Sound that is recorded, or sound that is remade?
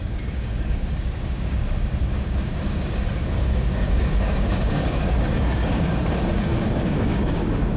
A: remade